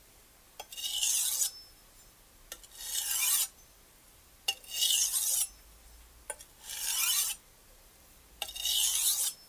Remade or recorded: recorded